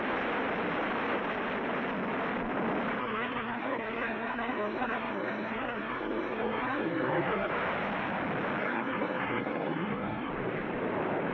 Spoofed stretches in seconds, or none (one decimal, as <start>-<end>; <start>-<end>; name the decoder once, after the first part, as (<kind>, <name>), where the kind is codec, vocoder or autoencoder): 3.0-7.5 (codec, SNAC); 8.6-10.3